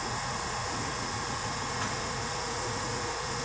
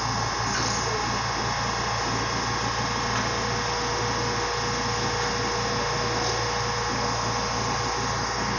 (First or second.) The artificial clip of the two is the first